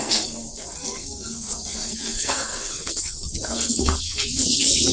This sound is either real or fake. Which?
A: fake